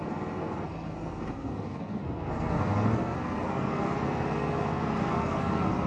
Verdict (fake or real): fake